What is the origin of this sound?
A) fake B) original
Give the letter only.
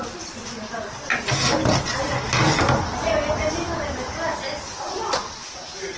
B